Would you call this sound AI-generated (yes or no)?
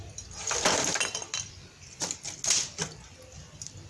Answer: no